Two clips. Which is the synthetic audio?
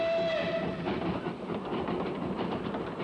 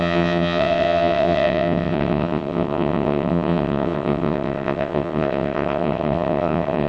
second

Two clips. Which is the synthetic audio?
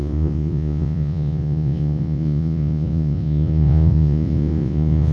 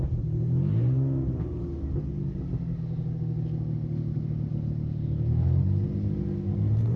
first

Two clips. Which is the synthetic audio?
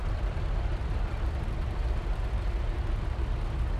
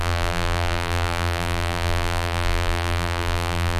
second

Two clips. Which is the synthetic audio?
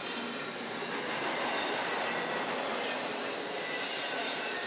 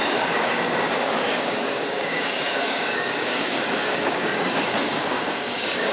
second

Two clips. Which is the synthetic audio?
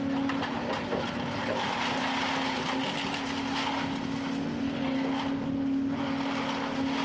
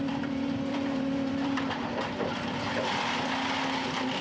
second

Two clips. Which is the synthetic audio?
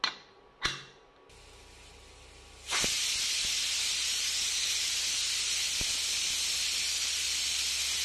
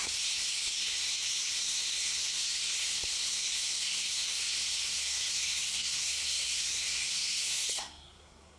second